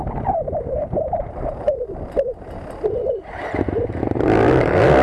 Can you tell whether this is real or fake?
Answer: real